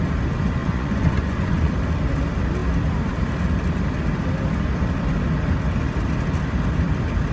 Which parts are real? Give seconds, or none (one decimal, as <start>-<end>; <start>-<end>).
0.0-0.6; 1.7-7.3